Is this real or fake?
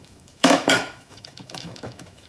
fake